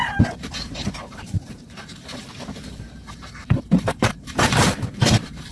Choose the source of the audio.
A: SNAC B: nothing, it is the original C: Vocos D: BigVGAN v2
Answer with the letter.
D